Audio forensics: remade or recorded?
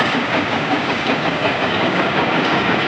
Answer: remade